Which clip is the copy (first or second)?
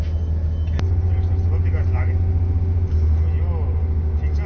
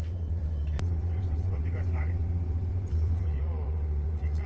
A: second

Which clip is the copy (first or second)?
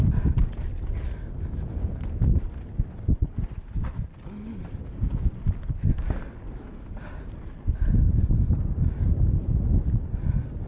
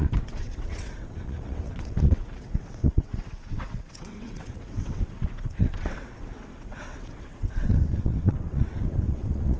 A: second